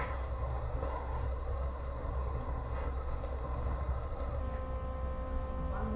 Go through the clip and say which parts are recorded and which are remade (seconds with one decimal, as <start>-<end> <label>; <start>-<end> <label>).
0.0-4.4 remade; 4.4-6.0 recorded